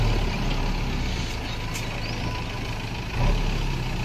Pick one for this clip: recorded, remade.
recorded